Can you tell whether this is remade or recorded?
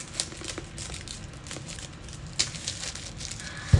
recorded